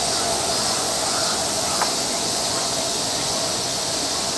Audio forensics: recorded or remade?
remade